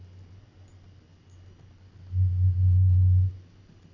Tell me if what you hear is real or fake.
real